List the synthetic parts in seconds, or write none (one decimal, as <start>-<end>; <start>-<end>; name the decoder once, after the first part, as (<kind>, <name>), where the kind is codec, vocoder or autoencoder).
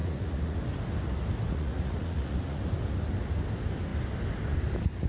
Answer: 0.0-0.6 (vocoder, Vocos); 1.5-2.6